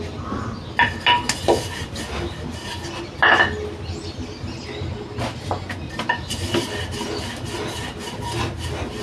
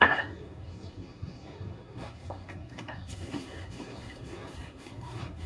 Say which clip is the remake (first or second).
second